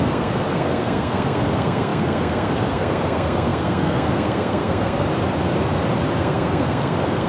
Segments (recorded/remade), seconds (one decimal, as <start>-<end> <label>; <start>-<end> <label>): 0.0-5.1 remade; 5.1-6.2 recorded; 6.2-7.3 remade